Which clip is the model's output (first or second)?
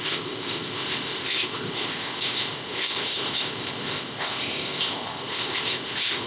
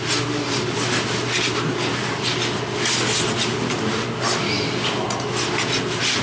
first